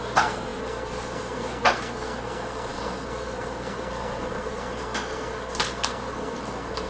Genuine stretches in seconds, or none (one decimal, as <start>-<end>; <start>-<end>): none